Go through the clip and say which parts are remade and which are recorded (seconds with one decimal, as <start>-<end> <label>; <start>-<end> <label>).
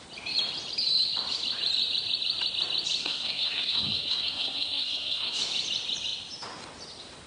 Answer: 0.0-3.0 recorded; 3.0-5.4 remade; 5.4-7.3 recorded